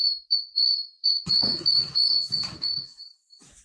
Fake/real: fake